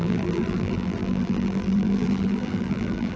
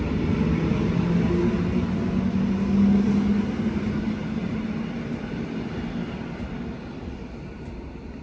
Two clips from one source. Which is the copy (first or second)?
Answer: first